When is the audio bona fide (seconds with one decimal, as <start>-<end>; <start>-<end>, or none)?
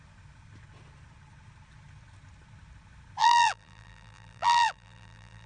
0.0-3.2